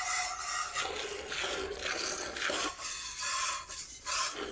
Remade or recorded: recorded